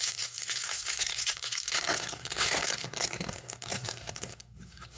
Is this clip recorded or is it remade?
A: remade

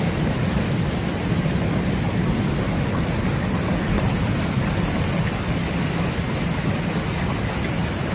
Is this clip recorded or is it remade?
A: recorded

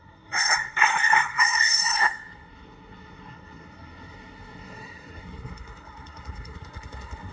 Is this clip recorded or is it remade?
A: remade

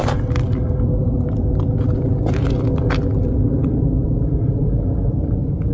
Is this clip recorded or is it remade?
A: recorded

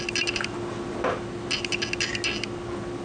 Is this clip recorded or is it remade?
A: recorded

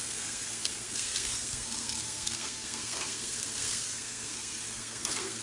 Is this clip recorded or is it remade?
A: remade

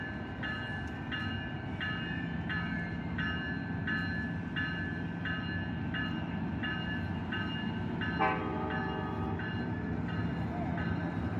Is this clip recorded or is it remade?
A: recorded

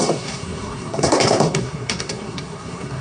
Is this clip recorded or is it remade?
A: remade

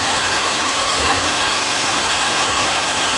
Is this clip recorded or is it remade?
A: remade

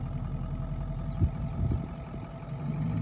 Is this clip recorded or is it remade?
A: recorded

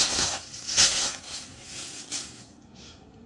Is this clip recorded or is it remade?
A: remade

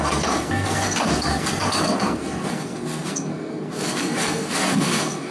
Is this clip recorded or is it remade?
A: remade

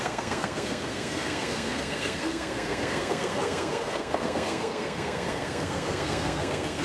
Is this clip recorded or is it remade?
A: remade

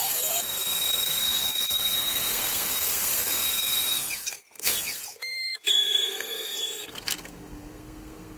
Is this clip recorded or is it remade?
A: remade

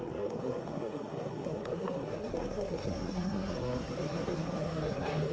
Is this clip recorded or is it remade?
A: remade